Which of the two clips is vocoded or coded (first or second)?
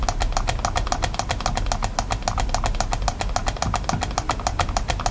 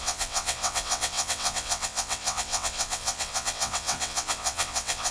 second